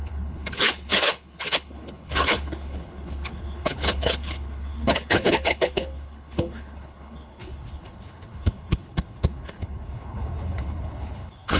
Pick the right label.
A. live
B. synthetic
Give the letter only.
B